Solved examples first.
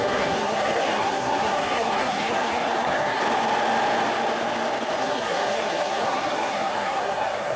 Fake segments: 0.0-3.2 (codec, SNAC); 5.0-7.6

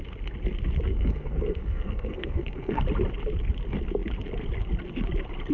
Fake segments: 0.9-2.8 (codec, SNAC)

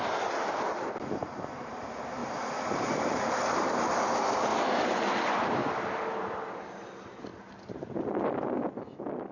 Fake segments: 1.2-1.7 (vocoder, BigVGAN v2); 2.2-3.2; 4.5-5.1

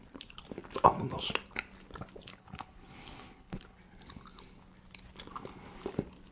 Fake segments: 2.3-3.8 (codec, HILCodec)

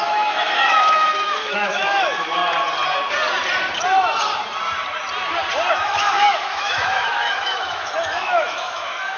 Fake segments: 0.0-2.4 (autoencoder, DAC-VAE); 5.7-9.2

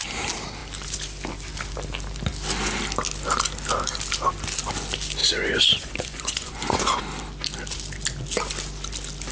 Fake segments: 5.2-7.0 (vocoder, Vocos)

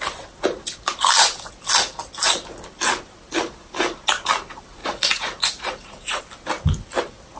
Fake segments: 4.8-6.2 (vocoder, Vocos)